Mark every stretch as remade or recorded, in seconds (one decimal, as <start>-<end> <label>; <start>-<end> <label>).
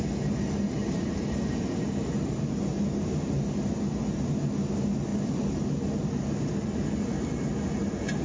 0.0-8.2 recorded